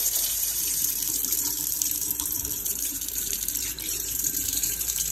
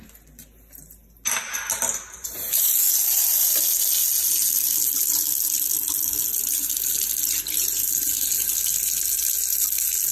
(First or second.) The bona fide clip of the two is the second